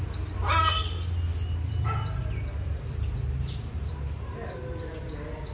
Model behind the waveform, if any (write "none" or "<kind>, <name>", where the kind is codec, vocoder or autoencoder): none